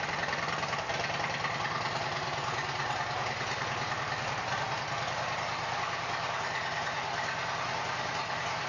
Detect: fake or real real